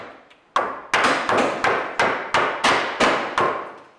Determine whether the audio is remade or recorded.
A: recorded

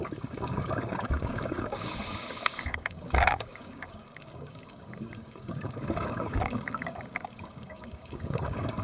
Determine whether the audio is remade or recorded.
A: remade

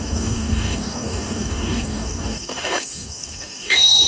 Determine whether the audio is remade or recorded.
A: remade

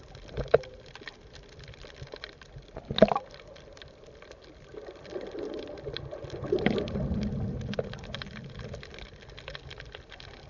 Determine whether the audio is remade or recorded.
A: recorded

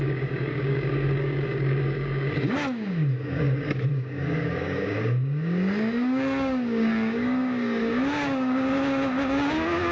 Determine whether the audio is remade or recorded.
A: remade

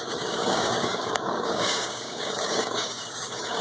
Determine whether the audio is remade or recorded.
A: remade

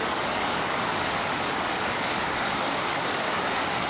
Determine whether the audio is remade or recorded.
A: remade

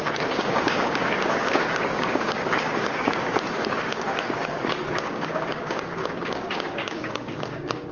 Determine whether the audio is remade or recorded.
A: remade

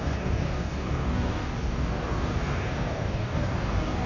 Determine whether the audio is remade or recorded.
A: remade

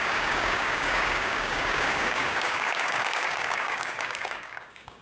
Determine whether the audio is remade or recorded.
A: remade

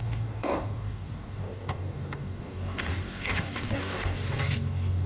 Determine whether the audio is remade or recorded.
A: remade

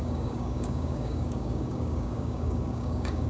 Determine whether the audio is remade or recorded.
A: remade